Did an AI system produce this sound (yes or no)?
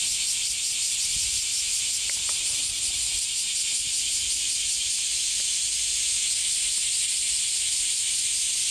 no